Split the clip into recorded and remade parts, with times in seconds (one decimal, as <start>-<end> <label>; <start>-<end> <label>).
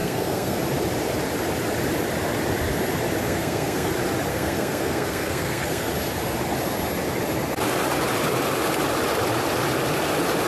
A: 0.0-0.6 remade; 0.6-3.2 recorded; 3.2-3.9 remade; 3.9-4.3 recorded; 4.3-5.9 remade; 5.9-10.5 recorded